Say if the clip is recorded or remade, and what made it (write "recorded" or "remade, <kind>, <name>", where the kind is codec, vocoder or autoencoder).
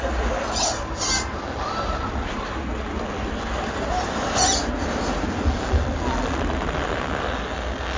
recorded